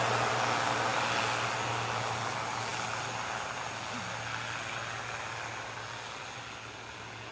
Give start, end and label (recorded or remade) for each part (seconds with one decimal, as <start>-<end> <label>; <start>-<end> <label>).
0.0-7.3 recorded